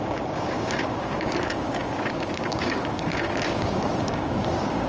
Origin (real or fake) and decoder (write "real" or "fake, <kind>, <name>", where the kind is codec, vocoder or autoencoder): fake, codec, DAC